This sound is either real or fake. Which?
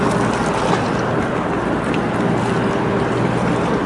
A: real